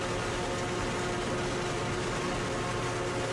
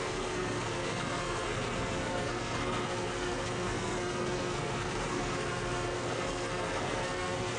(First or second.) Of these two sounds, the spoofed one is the second